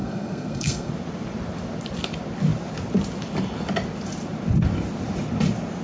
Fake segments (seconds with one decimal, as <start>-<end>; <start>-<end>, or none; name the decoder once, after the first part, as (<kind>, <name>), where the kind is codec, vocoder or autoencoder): 0.0-0.9 (codec, SNAC)